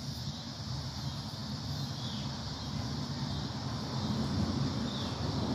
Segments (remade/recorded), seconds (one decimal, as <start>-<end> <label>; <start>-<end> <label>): 0.0-5.5 recorded